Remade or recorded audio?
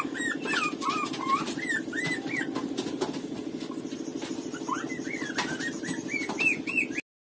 recorded